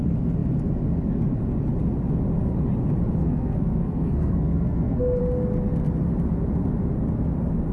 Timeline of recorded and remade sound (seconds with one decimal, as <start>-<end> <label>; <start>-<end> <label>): 0.0-3.2 recorded; 3.2-5.2 remade; 5.2-7.7 recorded